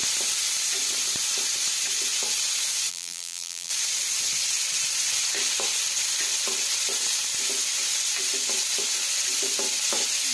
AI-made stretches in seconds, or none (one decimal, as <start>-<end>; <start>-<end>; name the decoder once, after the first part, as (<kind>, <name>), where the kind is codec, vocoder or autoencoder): 2.9-3.7 (vocoder, BigVGAN v2)